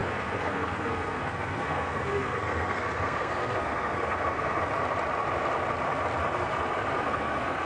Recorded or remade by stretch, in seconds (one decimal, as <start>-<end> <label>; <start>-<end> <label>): 0.0-4.6 remade; 4.6-7.0 recorded; 7.0-7.7 remade